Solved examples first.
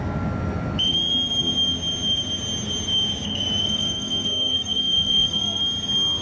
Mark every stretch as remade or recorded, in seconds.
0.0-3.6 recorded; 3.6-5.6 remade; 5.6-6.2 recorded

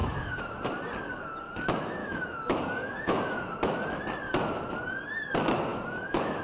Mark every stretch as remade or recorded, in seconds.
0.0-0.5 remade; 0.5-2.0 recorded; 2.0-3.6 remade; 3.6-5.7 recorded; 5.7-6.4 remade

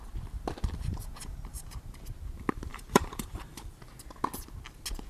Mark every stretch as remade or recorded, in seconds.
0.0-0.9 recorded; 0.9-2.1 remade; 2.1-2.7 recorded; 2.7-3.7 remade; 3.7-5.1 recorded

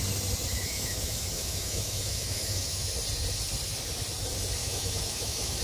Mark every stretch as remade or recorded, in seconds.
0.0-0.5 recorded; 0.5-2.9 remade; 2.9-4.6 recorded; 4.6-5.6 remade

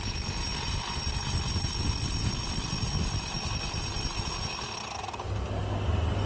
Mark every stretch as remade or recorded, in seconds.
0.0-6.3 recorded